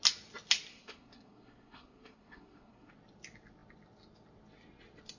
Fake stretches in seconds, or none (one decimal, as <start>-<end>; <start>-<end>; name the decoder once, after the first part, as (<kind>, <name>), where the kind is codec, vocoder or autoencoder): 0.7-2.9 (codec, SNAC)